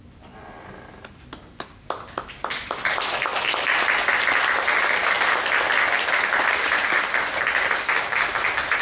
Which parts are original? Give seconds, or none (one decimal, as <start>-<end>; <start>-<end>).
0.0-3.3; 4.2-8.8